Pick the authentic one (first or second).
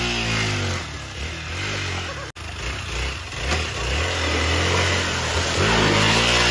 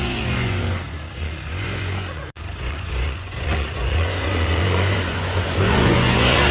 first